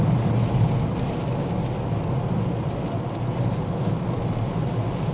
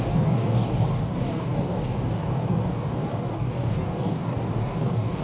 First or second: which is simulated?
second